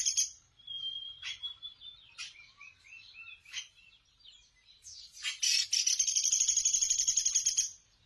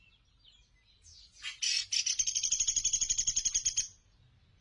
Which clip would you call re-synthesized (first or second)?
first